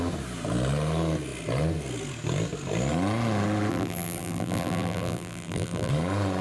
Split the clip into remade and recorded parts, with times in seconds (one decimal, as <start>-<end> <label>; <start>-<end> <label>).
0.0-3.7 recorded; 3.7-5.9 remade; 5.9-6.4 recorded